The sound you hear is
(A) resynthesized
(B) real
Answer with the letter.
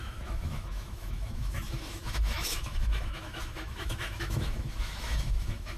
A